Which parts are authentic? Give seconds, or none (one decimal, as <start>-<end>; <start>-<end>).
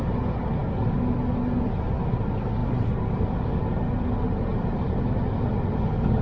0.0-2.6; 3.2-4.5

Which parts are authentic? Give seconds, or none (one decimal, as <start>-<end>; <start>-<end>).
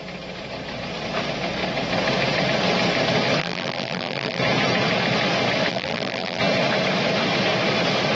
0.0-3.4; 4.4-5.7; 6.4-8.1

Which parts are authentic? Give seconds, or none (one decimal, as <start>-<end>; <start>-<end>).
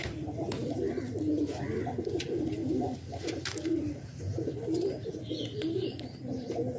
2.1-2.6; 6.0-6.8